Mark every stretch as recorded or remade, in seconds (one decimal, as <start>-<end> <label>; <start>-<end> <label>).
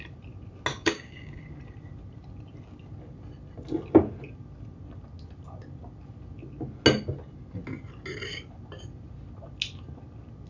0.0-0.7 recorded; 0.7-1.4 remade; 1.4-10.5 recorded